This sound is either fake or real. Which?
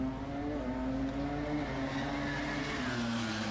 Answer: real